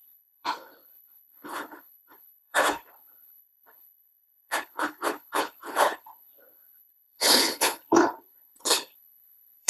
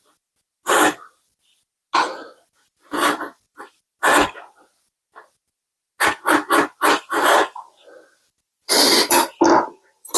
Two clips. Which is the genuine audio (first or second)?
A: second